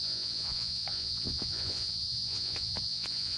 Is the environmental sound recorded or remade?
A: remade